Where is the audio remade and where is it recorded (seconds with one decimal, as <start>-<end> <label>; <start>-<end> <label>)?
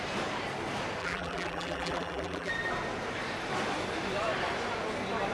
0.0-1.0 recorded; 1.0-2.5 remade; 2.5-5.3 recorded